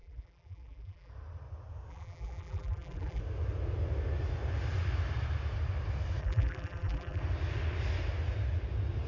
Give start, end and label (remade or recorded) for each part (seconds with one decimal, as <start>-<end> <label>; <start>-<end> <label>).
0.0-1.1 remade; 1.1-1.9 recorded; 1.9-3.2 remade; 3.2-6.2 recorded; 6.2-7.2 remade; 7.2-9.1 recorded